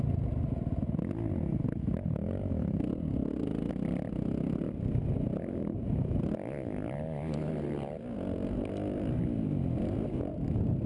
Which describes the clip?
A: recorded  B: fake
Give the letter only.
A